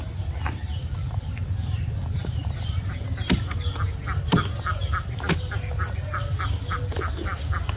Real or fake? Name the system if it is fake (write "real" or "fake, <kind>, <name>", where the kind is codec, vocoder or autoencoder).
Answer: fake, vocoder, BigVGAN v2